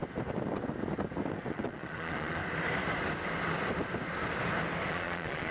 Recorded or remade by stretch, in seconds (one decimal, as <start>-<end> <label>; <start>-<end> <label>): 0.0-1.5 recorded; 1.5-2.4 remade; 2.4-4.9 recorded; 4.9-5.5 remade